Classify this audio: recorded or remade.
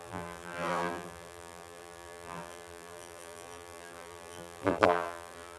remade